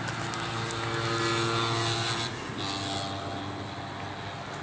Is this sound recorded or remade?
recorded